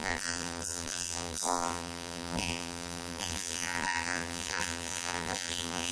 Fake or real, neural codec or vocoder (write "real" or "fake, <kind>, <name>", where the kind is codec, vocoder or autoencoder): fake, vocoder, BigVGAN v2